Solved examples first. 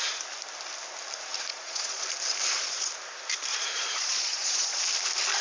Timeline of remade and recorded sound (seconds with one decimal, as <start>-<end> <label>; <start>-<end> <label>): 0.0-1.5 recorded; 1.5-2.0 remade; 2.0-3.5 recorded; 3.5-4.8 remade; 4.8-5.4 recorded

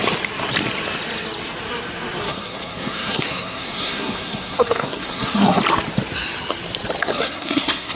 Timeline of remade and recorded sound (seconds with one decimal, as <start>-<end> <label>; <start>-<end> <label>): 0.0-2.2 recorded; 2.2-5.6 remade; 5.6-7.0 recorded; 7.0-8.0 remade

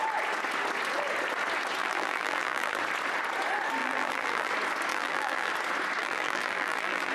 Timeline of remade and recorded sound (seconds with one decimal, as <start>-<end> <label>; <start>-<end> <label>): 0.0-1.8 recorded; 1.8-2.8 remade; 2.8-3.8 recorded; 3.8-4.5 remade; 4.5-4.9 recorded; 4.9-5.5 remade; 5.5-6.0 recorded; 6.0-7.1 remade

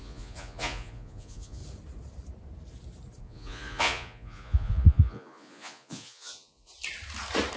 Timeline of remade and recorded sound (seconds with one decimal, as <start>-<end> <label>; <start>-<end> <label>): 0.0-1.6 remade; 1.6-3.2 recorded; 3.2-6.7 remade; 6.7-7.6 recorded

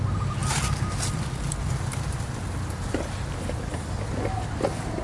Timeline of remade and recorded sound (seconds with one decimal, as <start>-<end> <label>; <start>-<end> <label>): 0.0-5.0 recorded

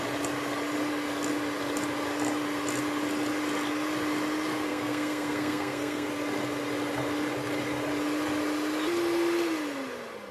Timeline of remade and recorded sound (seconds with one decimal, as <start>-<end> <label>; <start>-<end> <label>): 0.0-4.7 recorded; 4.7-6.1 remade; 6.1-10.3 recorded